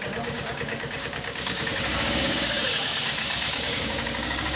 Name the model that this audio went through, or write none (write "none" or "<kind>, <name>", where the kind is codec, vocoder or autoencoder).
codec, DAC